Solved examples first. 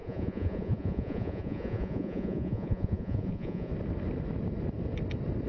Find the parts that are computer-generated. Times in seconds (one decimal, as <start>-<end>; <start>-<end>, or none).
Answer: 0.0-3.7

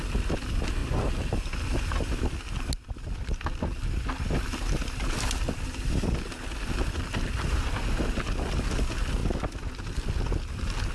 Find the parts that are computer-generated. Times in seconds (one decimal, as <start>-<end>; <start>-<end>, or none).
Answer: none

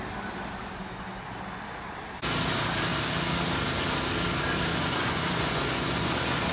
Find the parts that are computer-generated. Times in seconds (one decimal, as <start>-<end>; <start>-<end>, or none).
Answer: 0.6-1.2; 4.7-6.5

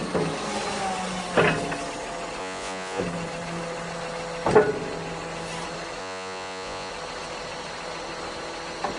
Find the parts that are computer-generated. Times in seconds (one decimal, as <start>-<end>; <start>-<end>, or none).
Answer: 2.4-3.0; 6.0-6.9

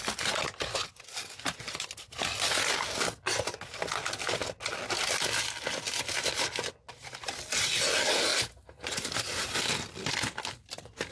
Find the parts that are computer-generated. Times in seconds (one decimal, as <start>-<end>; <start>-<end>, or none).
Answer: none

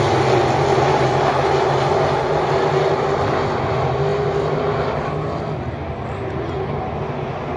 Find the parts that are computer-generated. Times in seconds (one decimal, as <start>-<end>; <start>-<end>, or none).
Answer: none

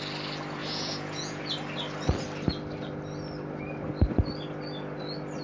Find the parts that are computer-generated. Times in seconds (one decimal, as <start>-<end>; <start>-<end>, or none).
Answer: 0.6-1.4